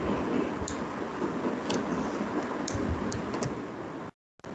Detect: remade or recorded recorded